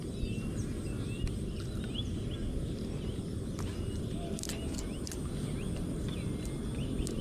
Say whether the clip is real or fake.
real